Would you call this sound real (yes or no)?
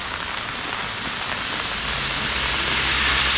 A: yes